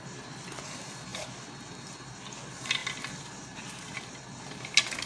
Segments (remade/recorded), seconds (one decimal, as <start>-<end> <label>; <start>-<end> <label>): 0.0-5.1 recorded